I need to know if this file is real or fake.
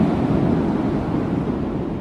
real